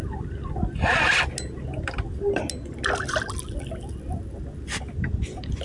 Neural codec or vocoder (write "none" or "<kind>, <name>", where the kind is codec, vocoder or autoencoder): none